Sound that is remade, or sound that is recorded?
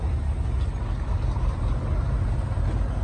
recorded